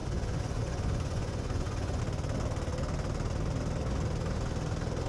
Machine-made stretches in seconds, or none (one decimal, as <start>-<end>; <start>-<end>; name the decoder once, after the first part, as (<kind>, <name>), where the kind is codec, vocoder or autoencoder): 0.0-2.0 (vocoder, Vocos)